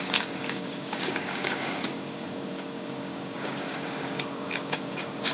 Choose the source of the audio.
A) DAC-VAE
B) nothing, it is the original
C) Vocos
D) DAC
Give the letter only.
D